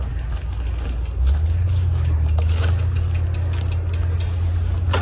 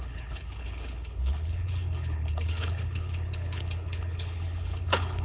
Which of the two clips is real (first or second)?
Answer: first